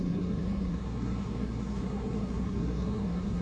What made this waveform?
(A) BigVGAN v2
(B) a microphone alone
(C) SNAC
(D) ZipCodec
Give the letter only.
C